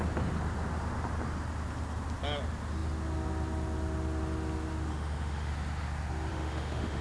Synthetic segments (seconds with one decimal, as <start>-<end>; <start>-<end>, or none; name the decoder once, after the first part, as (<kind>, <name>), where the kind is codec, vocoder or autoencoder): 4.9-5.5 (autoencoder, DAC-VAE); 6.3-7.0